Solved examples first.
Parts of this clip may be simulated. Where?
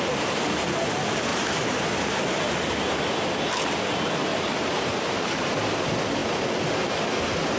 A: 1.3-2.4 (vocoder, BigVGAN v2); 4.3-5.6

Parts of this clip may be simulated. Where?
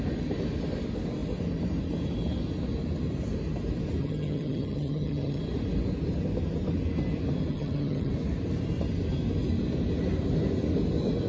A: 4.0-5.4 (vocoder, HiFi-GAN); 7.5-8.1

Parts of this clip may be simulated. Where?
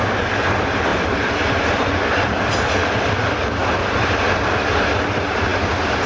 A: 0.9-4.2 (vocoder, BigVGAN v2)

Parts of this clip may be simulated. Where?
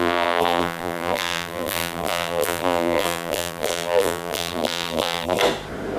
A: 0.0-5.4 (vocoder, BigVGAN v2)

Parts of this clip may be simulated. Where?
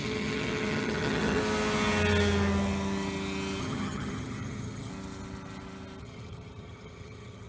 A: 0.0-1.4 (vocoder, HiFi-GAN); 3.6-4.9; 6.0-7.5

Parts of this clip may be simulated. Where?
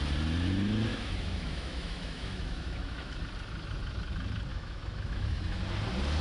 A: 0.9-3.2 (autoencoder, DAC-VAE); 4.5-5.6